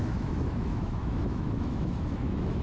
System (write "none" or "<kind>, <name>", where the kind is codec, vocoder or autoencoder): autoencoder, DAC-VAE